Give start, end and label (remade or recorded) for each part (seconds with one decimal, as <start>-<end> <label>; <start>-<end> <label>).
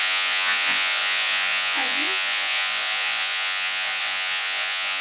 0.0-5.0 remade